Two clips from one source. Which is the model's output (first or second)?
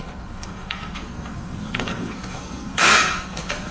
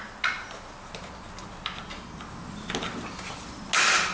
first